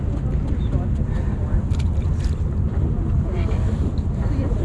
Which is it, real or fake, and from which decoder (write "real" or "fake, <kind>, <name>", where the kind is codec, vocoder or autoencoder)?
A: real